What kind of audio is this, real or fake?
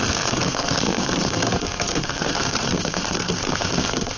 fake